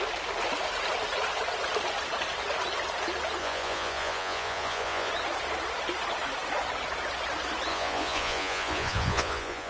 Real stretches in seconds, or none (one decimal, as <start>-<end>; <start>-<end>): 0.0-3.4; 5.1-7.7